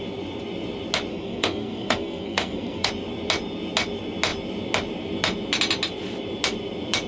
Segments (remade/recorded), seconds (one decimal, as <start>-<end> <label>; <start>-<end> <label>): 0.0-1.1 recorded; 1.1-2.9 remade; 2.9-7.1 recorded